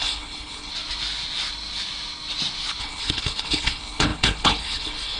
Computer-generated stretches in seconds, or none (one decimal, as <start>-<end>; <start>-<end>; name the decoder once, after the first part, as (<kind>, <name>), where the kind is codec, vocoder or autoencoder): 0.0-0.7 (codec, HILCodec); 2.8-5.2